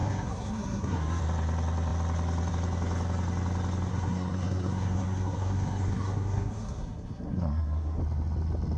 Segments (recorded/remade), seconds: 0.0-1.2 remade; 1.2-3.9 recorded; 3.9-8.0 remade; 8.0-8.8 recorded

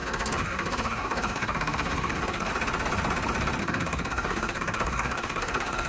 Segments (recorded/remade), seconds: 0.0-2.5 remade; 2.5-3.6 recorded; 3.6-5.9 remade